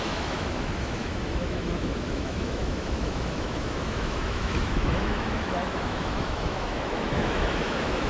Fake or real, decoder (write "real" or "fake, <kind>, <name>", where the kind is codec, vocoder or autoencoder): fake, autoencoder, DAC-VAE